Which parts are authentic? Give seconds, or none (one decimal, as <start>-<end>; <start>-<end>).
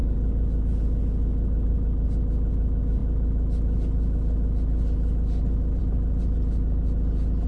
0.0-7.5